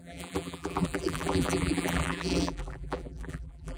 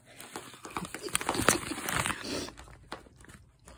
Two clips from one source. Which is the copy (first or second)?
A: first